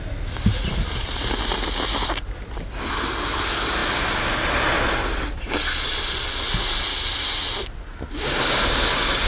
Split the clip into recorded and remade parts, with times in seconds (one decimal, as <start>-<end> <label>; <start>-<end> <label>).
0.0-9.3 recorded

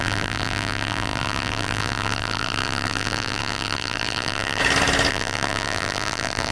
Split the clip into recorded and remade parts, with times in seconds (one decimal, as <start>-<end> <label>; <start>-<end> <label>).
0.0-4.6 remade; 4.6-5.1 recorded; 5.1-6.5 remade

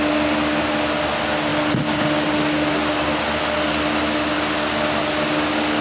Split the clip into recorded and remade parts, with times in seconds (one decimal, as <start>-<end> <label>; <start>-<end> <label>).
0.0-5.8 recorded

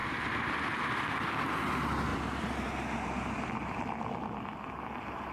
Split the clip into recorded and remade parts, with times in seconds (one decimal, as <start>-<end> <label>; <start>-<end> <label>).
0.0-2.1 recorded; 2.1-3.5 remade; 3.5-5.3 recorded

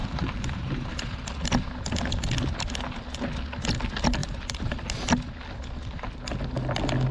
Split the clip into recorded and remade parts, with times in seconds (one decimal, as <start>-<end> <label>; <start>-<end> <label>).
0.0-0.9 remade; 0.9-4.2 recorded; 4.2-5.1 remade; 5.1-7.1 recorded

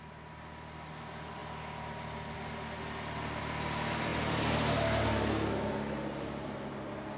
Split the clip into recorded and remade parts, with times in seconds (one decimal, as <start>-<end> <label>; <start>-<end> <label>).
0.0-7.2 recorded

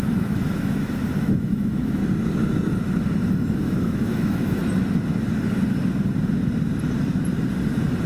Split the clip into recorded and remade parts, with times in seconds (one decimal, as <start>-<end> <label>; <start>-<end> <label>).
0.0-2.0 remade; 2.0-3.3 recorded; 3.3-4.6 remade; 4.6-8.1 recorded

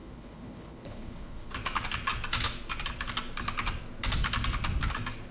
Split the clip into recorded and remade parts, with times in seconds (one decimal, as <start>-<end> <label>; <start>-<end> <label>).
0.0-1.5 remade; 1.5-5.3 recorded